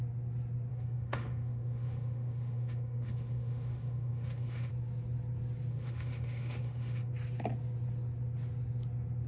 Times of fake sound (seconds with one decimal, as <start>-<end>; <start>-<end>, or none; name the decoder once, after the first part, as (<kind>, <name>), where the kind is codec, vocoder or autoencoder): 0.7-4.7 (autoencoder, DAC-VAE); 5.7-7.1

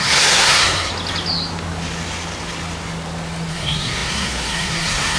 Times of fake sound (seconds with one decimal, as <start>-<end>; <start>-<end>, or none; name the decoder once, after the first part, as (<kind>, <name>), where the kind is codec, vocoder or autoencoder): 0.0-0.9 (codec, SNAC); 3.5-5.2

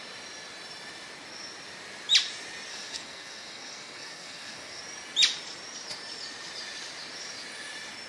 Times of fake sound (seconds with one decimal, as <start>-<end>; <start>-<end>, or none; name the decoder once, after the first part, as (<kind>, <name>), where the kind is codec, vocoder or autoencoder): 2.7-4.8 (codec, SNAC)

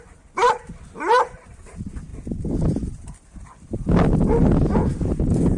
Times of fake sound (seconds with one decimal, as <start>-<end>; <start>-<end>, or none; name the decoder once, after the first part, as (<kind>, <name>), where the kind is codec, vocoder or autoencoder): none

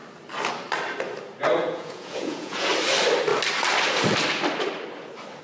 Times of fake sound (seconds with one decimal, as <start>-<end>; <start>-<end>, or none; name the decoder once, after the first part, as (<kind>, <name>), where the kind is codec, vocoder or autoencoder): 1.6-2.7 (vocoder, Vocos)

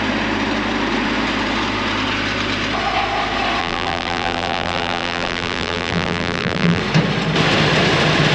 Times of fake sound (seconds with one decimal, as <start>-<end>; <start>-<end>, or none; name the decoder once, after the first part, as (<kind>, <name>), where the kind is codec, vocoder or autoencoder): 3.6-6.8 (vocoder, BigVGAN v2)

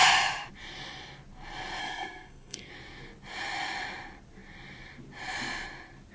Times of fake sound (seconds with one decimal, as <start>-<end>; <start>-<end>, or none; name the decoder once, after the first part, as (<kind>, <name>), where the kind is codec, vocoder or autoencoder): 1.8-2.7 (codec, SNAC)

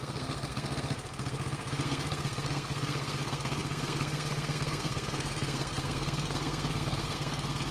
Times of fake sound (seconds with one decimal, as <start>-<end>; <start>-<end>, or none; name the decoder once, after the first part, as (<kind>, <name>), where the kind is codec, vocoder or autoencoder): 0.0-7.7 (codec, SNAC)